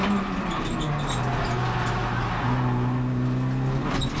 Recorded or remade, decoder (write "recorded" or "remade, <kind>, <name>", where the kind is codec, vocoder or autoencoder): recorded